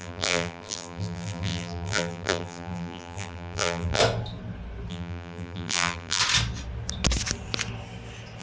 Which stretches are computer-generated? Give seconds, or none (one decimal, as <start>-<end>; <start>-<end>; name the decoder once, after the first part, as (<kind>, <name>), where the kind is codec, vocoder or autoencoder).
0.0-4.0 (vocoder, BigVGAN v2); 4.9-6.2